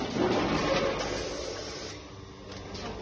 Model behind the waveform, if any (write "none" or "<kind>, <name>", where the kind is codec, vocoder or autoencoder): none